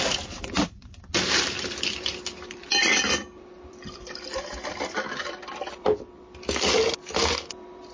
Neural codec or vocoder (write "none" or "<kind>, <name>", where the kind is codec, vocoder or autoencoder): vocoder, BigVGAN v2